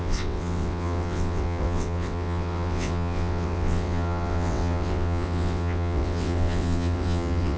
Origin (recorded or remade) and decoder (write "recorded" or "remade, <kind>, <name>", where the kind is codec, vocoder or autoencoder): remade, vocoder, WaveNeXt